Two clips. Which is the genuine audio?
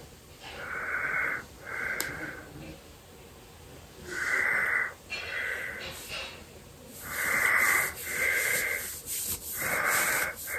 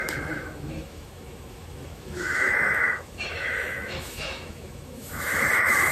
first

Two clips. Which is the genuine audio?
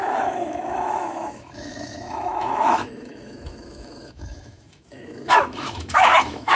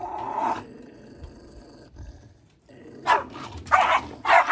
second